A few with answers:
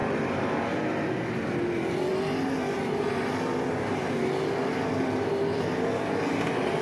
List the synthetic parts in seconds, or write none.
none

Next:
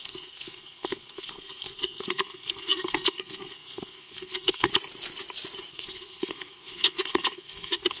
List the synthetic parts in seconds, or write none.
0.0-4.7 (codec, SNAC); 5.7-8.0

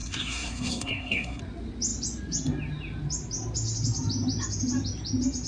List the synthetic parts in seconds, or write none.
0.0-1.4 (codec, SNAC)

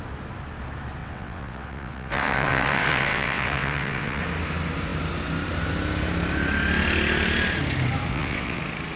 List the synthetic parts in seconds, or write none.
1.0-4.2 (vocoder, WaveNeXt); 8.1-8.6

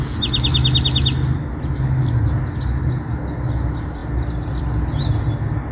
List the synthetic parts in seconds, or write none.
none

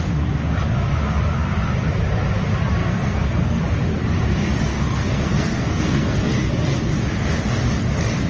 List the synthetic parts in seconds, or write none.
2.8-3.6 (codec, SNAC); 4.7-6.2

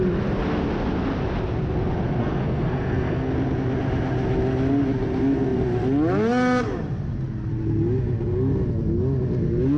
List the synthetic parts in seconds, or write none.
2.2-3.3 (codec, SNAC)